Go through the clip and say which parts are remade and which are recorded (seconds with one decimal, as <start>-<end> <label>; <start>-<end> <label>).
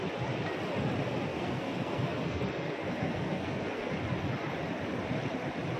0.0-1.3 recorded; 1.3-3.9 remade; 3.9-5.8 recorded